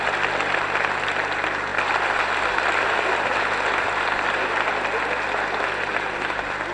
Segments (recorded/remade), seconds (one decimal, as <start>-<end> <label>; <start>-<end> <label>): 0.0-6.7 recorded